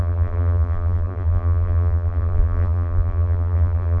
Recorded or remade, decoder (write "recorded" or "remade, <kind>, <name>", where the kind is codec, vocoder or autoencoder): remade, vocoder, BigVGAN v2